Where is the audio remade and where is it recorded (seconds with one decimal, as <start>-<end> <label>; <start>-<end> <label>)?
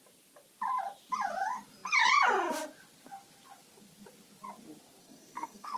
0.0-5.0 recorded; 5.0-5.8 remade